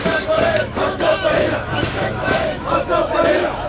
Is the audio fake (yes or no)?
yes